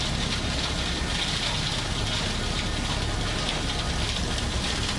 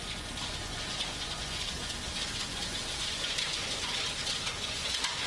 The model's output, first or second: second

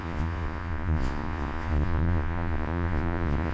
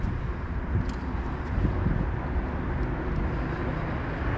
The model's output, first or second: first